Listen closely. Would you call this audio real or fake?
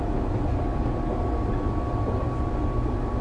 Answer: real